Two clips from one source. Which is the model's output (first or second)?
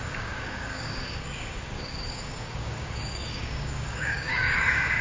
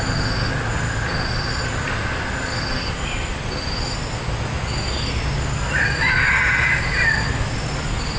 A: first